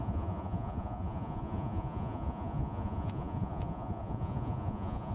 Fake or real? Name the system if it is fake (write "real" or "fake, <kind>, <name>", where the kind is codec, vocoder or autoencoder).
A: fake, vocoder, Vocos